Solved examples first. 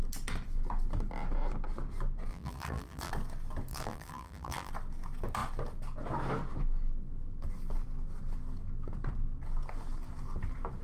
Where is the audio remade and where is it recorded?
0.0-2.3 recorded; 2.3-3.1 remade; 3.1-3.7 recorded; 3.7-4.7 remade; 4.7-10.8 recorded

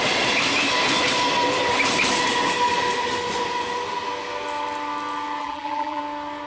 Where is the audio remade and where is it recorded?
0.0-5.4 recorded; 5.4-6.0 remade; 6.0-6.5 recorded

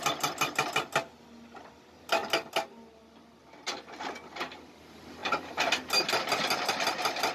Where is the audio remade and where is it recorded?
0.0-7.3 recorded

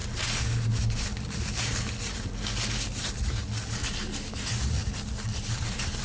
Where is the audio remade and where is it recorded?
0.0-1.5 recorded; 1.5-3.4 remade; 3.4-4.3 recorded; 4.3-6.0 remade

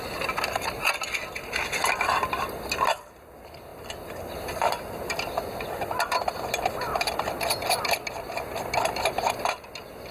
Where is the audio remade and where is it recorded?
0.0-3.7 recorded; 3.7-4.8 remade; 4.8-10.1 recorded

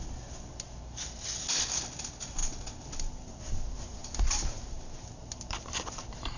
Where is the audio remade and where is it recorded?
0.0-6.4 recorded

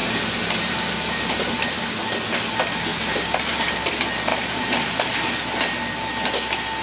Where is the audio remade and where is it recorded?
0.0-2.0 remade; 2.0-2.9 recorded; 2.9-3.9 remade; 3.9-4.3 recorded; 4.3-5.3 remade; 5.3-6.8 recorded